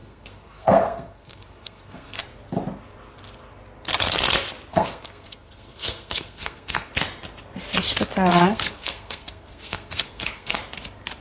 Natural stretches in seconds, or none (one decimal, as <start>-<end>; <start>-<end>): 2.2-4.7; 6.9-8.3; 10.6-11.2